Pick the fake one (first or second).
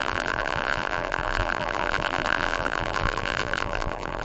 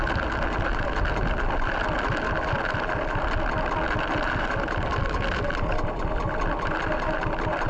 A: first